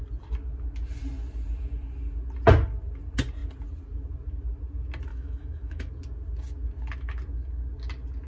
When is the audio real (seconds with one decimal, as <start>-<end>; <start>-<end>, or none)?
0.0-5.1; 5.9-8.3